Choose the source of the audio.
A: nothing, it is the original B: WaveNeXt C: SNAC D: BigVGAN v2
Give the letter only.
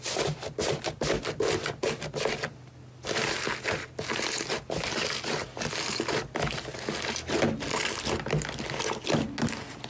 A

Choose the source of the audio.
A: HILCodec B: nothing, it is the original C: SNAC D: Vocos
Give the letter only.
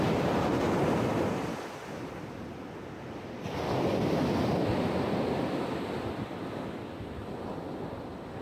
B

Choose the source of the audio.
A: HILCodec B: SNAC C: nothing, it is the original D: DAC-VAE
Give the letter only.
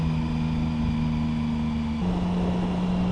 C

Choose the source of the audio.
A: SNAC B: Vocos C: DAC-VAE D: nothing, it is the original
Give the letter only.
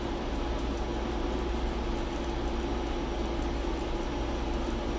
D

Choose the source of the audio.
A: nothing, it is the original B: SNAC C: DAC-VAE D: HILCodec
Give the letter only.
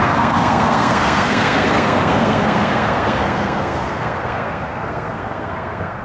B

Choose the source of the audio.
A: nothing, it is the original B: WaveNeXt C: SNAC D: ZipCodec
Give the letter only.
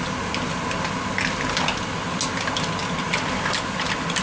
A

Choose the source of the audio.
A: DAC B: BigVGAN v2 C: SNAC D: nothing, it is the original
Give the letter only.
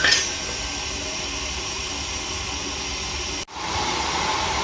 D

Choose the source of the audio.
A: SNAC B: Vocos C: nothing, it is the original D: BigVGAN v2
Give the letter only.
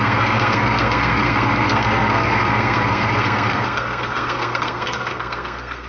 A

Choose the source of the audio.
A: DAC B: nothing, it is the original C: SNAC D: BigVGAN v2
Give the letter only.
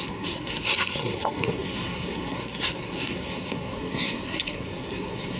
C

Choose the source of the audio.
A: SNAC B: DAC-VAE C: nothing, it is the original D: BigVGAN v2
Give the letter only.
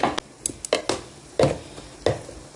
C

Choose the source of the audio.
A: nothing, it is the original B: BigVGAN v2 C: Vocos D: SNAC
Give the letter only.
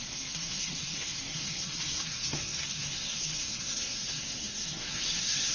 D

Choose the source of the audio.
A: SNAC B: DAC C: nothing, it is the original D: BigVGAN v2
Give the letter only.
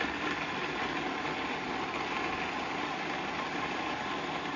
C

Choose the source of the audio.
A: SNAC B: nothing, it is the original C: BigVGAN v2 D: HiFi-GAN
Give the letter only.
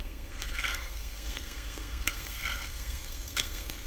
A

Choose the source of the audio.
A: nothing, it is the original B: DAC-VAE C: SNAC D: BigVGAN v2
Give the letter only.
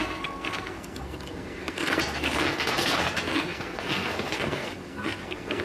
C